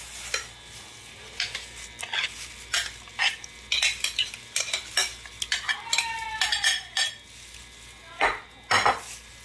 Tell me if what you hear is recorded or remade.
recorded